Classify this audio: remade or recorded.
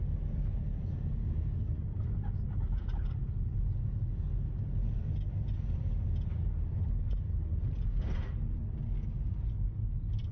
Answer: recorded